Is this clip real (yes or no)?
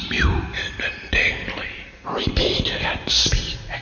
no